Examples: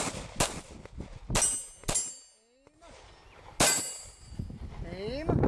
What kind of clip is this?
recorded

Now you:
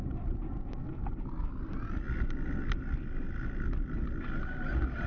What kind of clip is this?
recorded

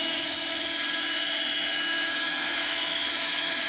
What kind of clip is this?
remade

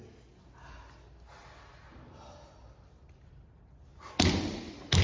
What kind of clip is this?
recorded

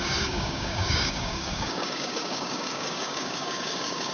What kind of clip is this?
remade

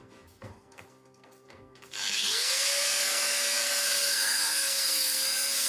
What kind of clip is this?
remade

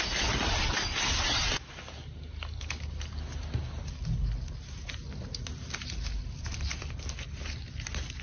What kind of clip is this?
recorded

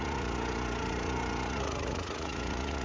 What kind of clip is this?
remade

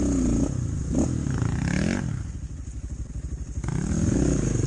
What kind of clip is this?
recorded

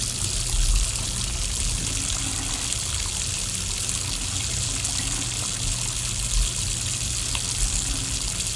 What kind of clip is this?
recorded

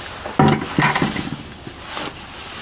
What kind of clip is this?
recorded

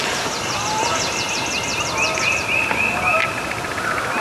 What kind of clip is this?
recorded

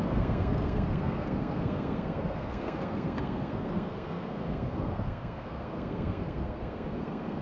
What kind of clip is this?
remade